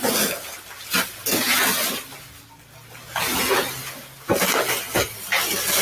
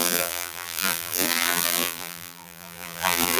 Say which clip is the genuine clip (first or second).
first